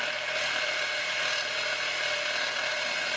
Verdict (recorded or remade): recorded